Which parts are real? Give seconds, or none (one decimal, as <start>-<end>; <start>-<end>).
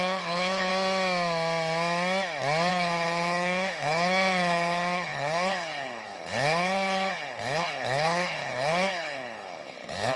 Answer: 0.7-2.7